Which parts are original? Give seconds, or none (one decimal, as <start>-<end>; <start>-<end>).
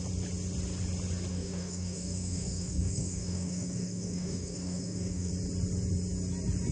0.0-1.3; 5.3-6.7